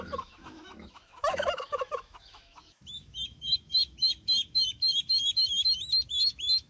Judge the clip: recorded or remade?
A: remade